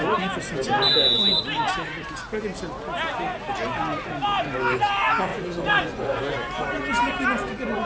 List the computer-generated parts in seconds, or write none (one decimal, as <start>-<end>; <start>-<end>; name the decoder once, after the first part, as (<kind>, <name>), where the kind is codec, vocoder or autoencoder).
5.3-6.2 (vocoder, Vocos)